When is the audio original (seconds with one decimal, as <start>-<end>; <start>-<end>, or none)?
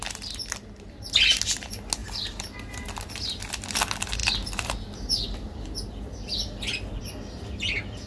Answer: 0.0-8.1